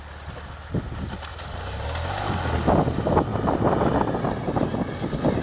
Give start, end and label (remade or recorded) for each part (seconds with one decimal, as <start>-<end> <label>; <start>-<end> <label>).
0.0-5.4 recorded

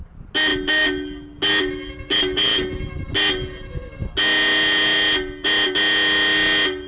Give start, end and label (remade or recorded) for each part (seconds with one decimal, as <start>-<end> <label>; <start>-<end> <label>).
0.0-6.9 recorded

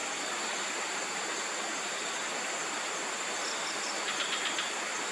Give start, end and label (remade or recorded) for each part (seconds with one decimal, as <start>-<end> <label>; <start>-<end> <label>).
0.0-5.1 recorded

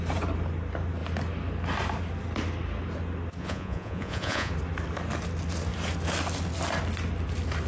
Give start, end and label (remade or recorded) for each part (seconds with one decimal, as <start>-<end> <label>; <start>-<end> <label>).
0.0-3.4 recorded; 3.4-4.5 remade; 4.5-7.7 recorded

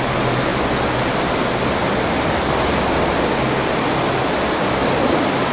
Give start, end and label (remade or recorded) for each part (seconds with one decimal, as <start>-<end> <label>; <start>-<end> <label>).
0.0-5.5 recorded

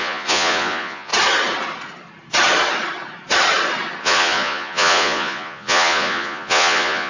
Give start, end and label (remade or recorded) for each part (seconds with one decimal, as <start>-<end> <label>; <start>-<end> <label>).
0.0-1.1 remade; 1.1-4.0 recorded; 4.0-7.1 remade

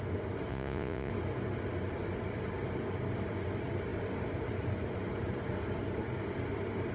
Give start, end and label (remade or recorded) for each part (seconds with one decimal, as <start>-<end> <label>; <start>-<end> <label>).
0.0-0.5 recorded; 0.5-1.1 remade; 1.1-6.9 recorded